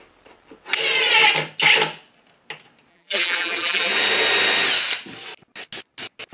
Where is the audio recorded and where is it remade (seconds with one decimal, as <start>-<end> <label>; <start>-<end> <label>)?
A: 0.0-2.9 recorded; 2.9-3.9 remade; 3.9-6.3 recorded